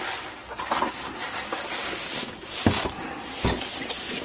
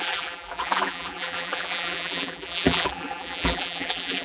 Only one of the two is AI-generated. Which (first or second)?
second